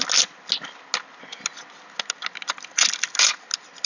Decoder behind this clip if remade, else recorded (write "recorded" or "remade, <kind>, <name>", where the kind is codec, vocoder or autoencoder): recorded